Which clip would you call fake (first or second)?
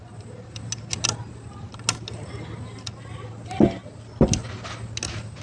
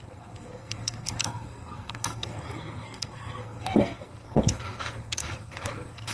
second